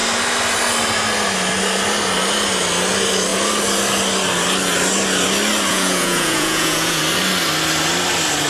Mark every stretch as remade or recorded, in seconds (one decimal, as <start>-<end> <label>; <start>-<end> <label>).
0.0-5.7 recorded; 5.7-7.0 remade; 7.0-8.5 recorded